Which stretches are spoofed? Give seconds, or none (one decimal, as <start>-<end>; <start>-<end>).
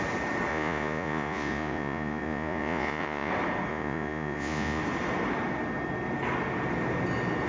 0.5-3.3; 3.7-4.8